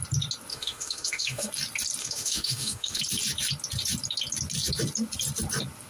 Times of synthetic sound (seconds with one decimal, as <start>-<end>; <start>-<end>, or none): 0.5-1.5; 2.0-3.0